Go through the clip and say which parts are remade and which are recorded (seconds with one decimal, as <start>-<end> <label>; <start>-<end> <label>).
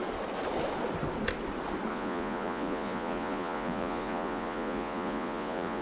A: 0.0-1.9 recorded; 1.9-5.8 remade